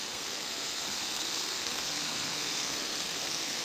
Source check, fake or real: fake